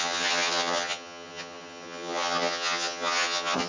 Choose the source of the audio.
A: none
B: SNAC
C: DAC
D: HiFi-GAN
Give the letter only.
D